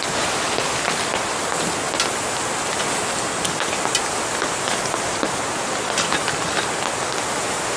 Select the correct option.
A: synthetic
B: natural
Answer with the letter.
B